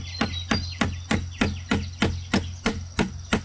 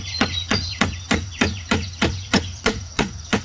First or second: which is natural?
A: first